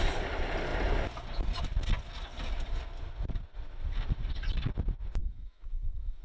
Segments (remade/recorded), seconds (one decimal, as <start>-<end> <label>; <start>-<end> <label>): 0.0-5.2 recorded; 5.2-6.2 remade